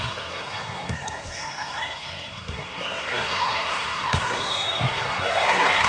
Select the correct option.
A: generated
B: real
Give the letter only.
A